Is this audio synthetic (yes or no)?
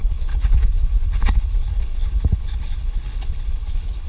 yes